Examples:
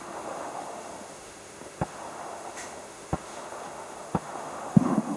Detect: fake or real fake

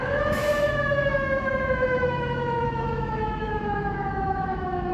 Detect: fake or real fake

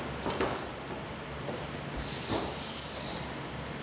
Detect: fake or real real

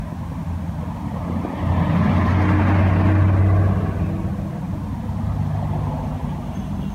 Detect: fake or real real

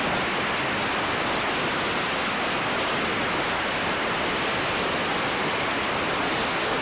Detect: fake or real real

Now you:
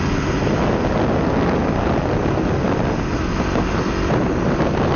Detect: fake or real real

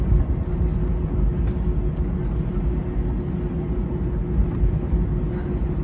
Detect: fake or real real